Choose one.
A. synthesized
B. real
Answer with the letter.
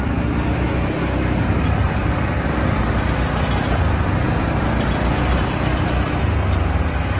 B